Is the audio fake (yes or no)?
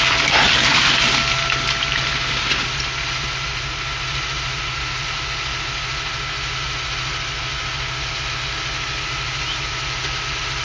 no